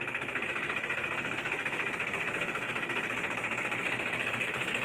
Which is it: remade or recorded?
remade